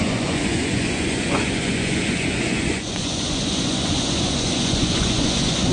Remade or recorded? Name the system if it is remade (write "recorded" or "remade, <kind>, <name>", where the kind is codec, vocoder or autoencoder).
remade, vocoder, Vocos